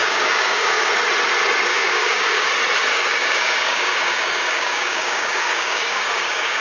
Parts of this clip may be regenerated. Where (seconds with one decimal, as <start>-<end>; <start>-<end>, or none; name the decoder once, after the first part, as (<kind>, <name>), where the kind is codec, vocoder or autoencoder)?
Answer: 0.0-0.9 (codec, DAC); 1.7-2.5; 2.9-6.6